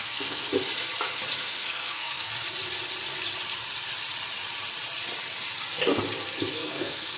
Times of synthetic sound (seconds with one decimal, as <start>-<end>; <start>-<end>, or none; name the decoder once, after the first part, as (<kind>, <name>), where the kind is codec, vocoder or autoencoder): 0.0-0.5 (codec, SNAC); 1.4-2.3; 6.5-7.2